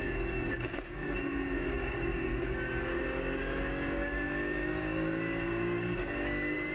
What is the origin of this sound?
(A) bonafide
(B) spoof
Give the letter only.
B